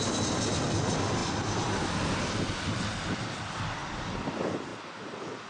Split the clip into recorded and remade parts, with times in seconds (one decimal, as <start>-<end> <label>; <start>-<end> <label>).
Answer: 0.0-5.5 recorded